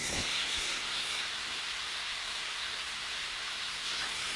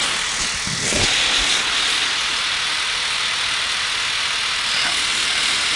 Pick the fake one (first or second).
first